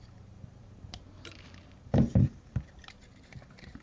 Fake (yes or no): yes